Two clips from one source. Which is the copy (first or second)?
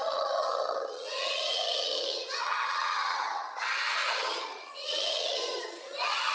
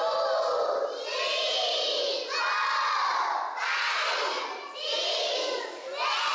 first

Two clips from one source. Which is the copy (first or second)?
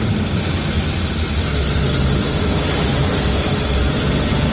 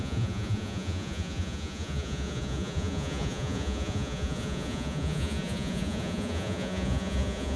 second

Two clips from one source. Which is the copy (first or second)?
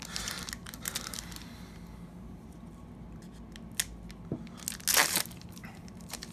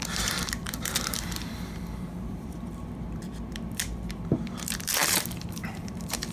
second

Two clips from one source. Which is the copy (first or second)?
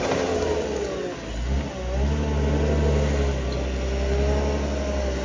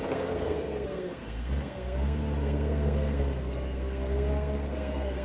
second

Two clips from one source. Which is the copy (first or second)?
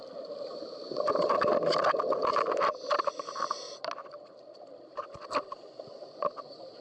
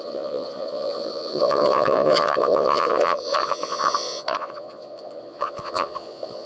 second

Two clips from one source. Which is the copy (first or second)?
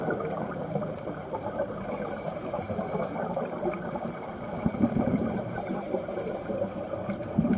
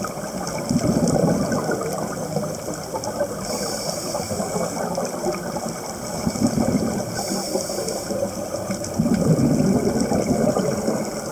first